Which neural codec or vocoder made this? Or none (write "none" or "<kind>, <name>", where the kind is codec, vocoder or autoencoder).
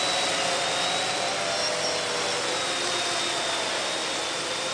none